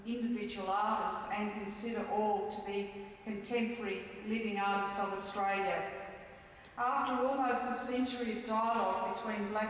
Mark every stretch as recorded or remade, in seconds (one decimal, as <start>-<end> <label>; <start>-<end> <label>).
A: 0.0-9.7 recorded